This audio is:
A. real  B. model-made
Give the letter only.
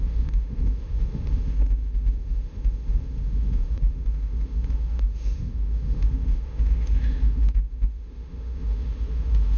B